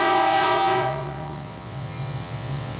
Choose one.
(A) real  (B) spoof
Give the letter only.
B